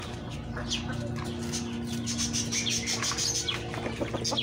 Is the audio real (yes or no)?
yes